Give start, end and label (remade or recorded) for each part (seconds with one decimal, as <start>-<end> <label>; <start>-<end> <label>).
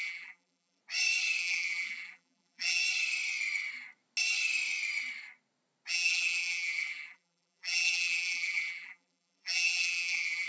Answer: 0.0-0.8 remade; 0.8-1.4 recorded; 1.4-2.8 remade; 2.8-5.9 recorded; 5.9-10.5 remade